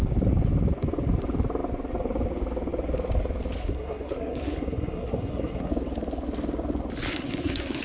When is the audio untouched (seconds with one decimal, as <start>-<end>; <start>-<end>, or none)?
0.0-3.6; 5.7-7.1